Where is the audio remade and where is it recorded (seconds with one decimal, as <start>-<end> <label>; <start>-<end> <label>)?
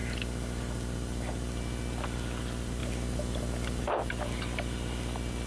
0.0-5.5 recorded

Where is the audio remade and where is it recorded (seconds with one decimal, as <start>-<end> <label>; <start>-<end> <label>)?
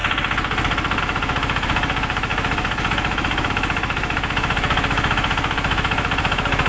0.0-1.0 recorded; 1.0-6.7 remade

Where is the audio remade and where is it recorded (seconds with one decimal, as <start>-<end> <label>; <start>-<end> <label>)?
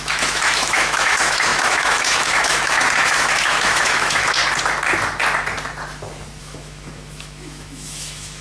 0.0-4.4 remade; 4.4-6.4 recorded; 6.4-8.4 remade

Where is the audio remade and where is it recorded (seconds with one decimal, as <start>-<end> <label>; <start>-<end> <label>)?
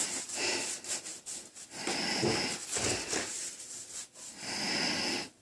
0.0-5.4 recorded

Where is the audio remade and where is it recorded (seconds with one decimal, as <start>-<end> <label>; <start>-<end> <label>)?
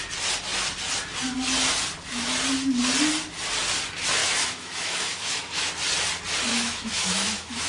0.0-4.2 recorded; 4.2-5.7 remade; 5.7-6.5 recorded; 6.5-7.7 remade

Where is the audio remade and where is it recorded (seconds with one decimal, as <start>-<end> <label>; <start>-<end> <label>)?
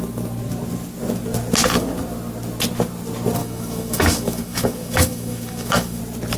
0.0-3.4 recorded; 3.4-6.0 remade; 6.0-6.4 recorded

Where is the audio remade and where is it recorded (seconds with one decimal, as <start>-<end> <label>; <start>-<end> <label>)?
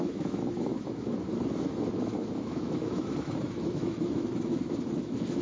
0.0-5.4 remade